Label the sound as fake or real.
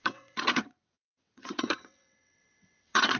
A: fake